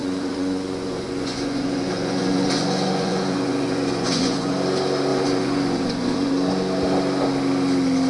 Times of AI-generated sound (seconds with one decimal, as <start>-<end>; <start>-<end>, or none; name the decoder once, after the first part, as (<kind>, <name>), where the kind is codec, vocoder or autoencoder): 0.0-4.5 (vocoder, Vocos); 5.1-6.3